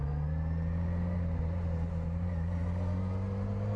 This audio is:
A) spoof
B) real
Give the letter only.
B